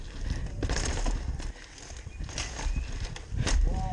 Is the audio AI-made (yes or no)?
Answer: no